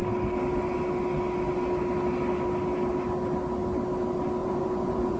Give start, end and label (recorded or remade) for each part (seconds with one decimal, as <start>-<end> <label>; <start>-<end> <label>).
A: 0.0-4.4 recorded; 4.4-5.2 remade